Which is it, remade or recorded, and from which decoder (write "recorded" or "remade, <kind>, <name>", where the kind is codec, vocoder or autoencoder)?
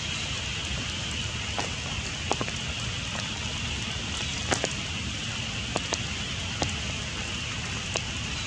recorded